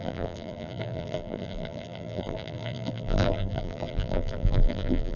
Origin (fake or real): fake